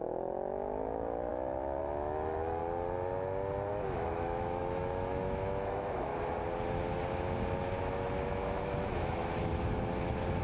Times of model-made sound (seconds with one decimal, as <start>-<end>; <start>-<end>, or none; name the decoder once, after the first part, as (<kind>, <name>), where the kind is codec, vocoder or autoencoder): 0.0-2.6 (autoencoder, DAC-VAE); 3.7-6.1; 7.8-9.5